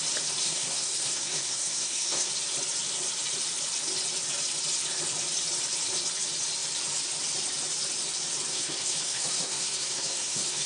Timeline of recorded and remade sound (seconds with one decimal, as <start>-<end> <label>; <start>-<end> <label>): 0.0-0.4 recorded; 0.4-2.3 remade; 2.3-8.5 recorded; 8.5-10.7 remade